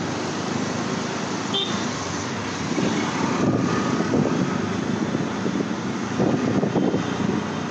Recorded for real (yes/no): yes